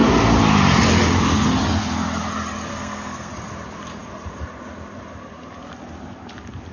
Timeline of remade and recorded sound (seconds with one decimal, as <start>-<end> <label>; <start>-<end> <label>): 0.0-2.7 recorded; 2.7-3.3 remade; 3.3-6.7 recorded